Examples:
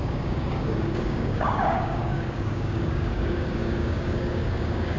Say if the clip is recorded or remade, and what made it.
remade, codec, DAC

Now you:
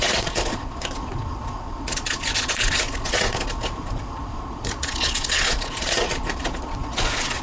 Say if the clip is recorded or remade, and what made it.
remade, vocoder, Vocos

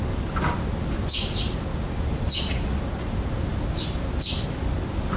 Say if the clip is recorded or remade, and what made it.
recorded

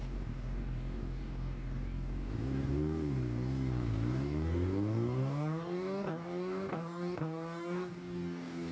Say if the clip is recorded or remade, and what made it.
remade, codec, DAC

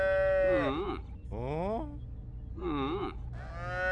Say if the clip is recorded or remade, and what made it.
recorded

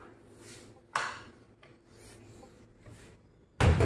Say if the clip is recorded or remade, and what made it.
recorded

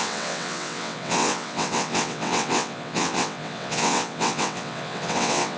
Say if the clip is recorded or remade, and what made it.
remade, vocoder, WaveNeXt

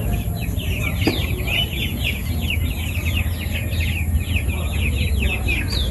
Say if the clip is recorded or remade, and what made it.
recorded